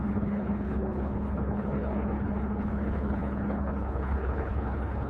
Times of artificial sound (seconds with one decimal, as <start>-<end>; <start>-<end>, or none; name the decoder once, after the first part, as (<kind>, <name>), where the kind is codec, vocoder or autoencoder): 0.0-5.1 (codec, HILCodec)